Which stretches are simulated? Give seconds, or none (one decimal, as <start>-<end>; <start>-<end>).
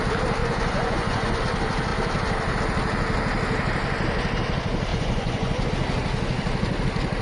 0.4-1.4; 4.9-5.7